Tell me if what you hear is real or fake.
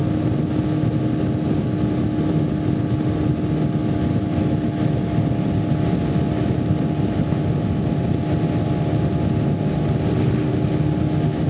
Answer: real